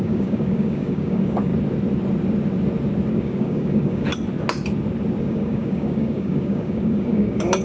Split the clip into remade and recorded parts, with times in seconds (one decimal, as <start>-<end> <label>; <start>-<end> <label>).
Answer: 0.0-1.5 remade; 1.5-3.1 recorded; 3.1-4.1 remade; 4.1-5.2 recorded; 5.2-7.6 remade